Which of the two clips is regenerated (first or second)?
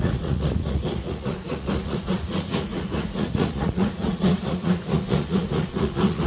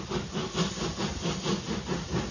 first